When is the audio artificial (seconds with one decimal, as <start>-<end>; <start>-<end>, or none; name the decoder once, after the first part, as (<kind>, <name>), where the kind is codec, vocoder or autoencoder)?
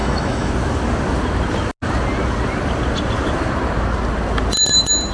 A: 0.0-0.5 (autoencoder, DAC-VAE)